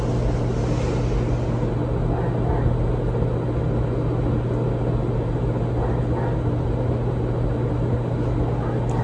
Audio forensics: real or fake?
real